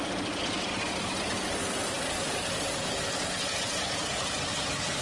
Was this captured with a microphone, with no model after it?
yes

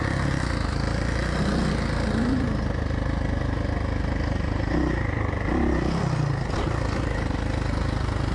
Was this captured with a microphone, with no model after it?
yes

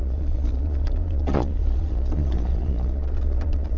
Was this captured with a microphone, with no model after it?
no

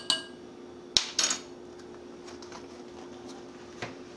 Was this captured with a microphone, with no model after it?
yes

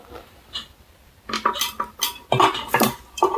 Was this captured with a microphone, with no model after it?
yes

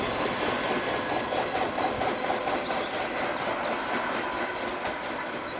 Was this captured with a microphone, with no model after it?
yes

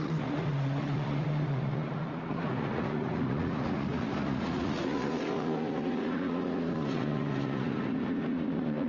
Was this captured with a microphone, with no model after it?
no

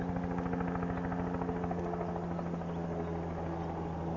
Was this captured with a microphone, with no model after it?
yes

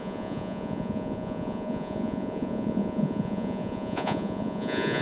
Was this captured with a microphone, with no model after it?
no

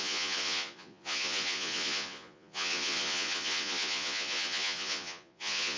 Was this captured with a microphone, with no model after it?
no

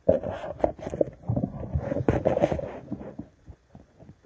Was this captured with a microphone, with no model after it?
no